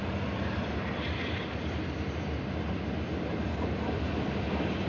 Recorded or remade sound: recorded